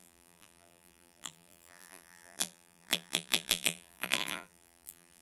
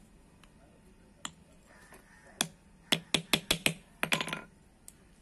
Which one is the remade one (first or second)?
first